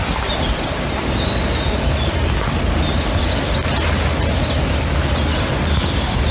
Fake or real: real